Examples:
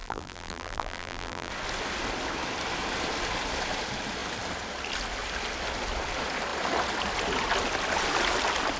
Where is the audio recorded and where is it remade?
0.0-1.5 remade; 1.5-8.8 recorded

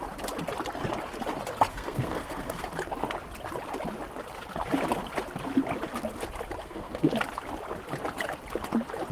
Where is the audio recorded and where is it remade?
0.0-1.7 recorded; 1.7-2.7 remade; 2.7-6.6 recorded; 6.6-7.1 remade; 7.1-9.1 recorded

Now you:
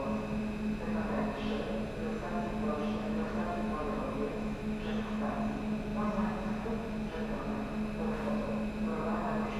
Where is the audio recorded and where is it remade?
0.0-2.8 recorded; 2.8-5.3 remade; 5.3-9.6 recorded

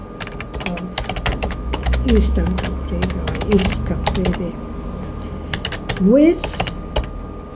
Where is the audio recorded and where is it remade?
0.0-1.4 recorded; 1.4-3.6 remade; 3.6-7.5 recorded

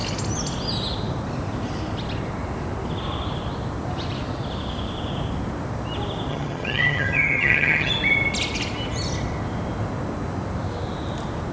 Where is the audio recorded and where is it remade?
0.0-6.3 recorded; 6.3-7.9 remade; 7.9-11.5 recorded

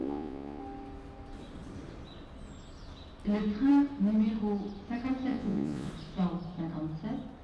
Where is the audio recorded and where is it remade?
0.0-0.6 remade; 0.6-5.3 recorded; 5.3-5.9 remade; 5.9-7.4 recorded

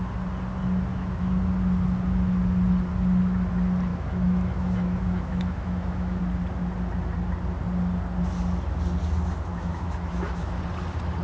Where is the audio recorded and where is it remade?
0.0-0.9 recorded; 0.9-1.4 remade; 1.4-3.9 recorded; 3.9-6.2 remade; 6.2-9.5 recorded; 9.5-10.6 remade; 10.6-11.2 recorded